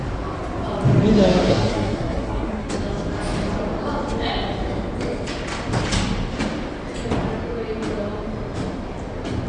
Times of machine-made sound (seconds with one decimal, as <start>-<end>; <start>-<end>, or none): 1.5-2.7